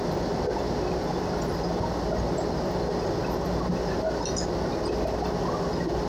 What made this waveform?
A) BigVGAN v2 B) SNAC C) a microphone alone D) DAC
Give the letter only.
C